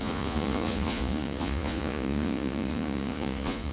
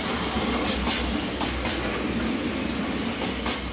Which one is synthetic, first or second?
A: first